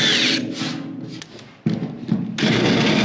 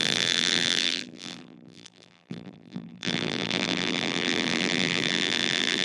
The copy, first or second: second